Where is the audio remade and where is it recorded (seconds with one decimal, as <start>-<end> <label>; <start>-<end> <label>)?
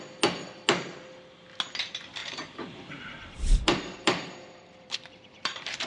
0.0-2.2 recorded; 2.2-5.9 remade